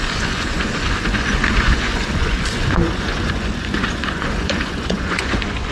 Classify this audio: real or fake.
fake